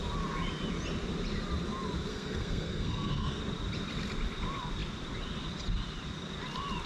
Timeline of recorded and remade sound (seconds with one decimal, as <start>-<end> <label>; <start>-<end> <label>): 0.0-2.1 recorded; 2.1-3.4 remade; 3.4-6.9 recorded